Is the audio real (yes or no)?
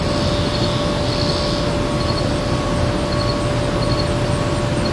yes